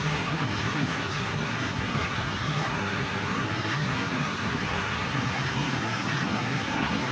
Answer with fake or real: fake